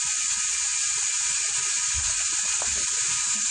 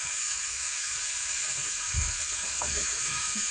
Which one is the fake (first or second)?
second